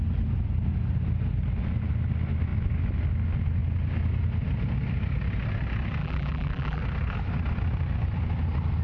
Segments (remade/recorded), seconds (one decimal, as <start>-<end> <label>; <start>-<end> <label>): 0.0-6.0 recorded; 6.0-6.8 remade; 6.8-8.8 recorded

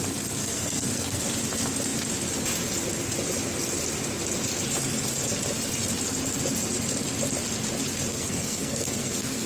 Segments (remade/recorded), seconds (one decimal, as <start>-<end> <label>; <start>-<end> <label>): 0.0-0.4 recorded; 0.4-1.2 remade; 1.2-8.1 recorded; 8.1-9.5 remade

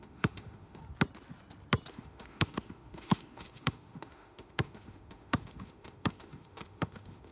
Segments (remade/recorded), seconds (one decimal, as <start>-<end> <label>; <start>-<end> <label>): 0.0-0.8 remade; 0.8-1.9 recorded; 1.9-7.3 remade

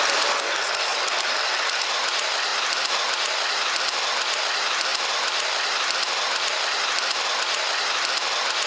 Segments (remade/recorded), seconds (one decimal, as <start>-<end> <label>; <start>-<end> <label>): 0.0-0.9 recorded; 0.9-2.1 remade; 2.1-4.9 recorded; 4.9-7.4 remade; 7.4-8.7 recorded

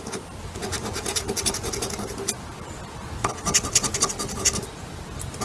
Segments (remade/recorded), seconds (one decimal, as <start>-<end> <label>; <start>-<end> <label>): 0.0-5.4 recorded

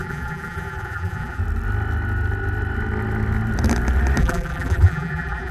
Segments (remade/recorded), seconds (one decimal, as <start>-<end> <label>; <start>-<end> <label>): 0.0-1.4 remade; 1.4-4.2 recorded; 4.2-5.5 remade

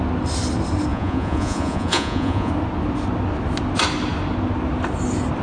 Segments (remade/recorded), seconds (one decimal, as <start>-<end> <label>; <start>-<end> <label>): 0.0-0.9 recorded; 0.9-2.5 remade; 2.5-5.4 recorded